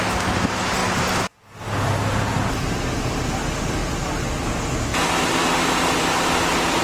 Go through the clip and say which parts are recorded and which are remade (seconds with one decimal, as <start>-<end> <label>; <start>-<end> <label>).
0.0-6.8 recorded